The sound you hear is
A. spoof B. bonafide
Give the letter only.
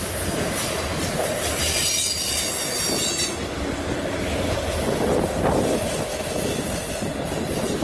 B